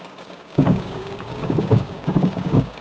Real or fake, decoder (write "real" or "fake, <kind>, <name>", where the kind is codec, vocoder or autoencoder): fake, codec, DAC